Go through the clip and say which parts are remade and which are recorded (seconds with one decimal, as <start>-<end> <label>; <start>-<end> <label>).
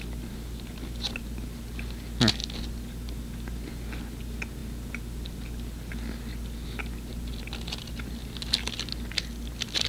0.0-9.9 recorded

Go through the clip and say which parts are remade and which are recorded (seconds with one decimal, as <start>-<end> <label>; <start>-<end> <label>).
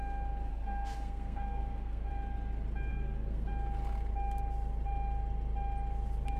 0.0-0.5 recorded; 0.5-2.1 remade; 2.1-2.9 recorded; 2.9-3.5 remade; 3.5-6.4 recorded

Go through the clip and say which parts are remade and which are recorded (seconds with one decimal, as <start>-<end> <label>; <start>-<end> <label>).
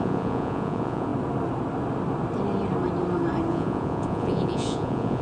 0.0-1.1 remade; 1.1-3.5 recorded; 3.5-5.2 remade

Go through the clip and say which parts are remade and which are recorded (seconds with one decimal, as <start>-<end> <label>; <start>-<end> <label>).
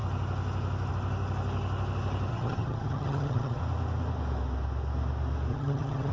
0.0-2.3 recorded; 2.3-3.6 remade; 3.6-5.5 recorded; 5.5-6.1 remade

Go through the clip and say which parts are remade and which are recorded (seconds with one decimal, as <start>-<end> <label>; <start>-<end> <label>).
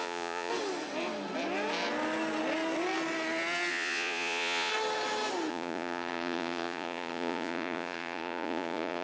0.0-0.5 remade; 0.5-3.7 recorded; 3.7-4.7 remade; 4.7-5.5 recorded; 5.5-9.0 remade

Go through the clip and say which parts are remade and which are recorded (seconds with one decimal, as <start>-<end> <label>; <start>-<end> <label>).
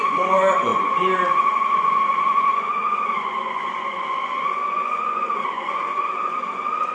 0.0-6.9 remade